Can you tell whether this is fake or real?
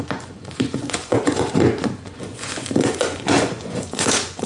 fake